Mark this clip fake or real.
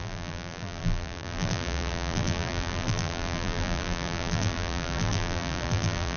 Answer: fake